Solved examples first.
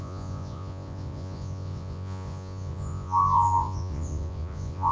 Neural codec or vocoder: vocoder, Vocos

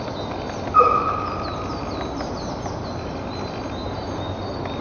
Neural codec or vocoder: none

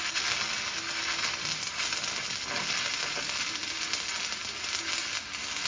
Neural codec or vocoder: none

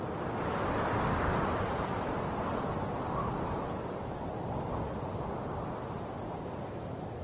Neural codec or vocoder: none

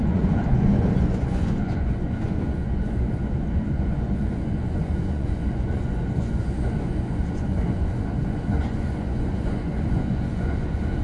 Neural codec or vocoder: vocoder, Vocos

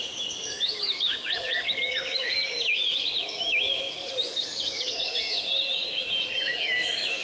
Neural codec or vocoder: codec, DAC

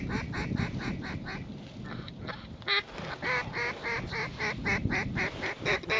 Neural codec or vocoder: none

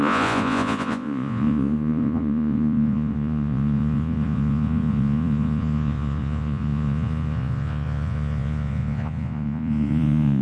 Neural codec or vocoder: vocoder, Vocos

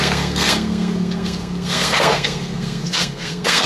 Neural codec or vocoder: codec, SNAC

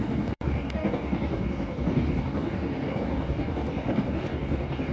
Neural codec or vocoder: codec, DAC